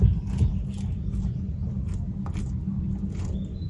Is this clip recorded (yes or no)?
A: yes